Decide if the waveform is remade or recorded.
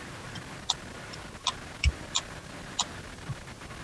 recorded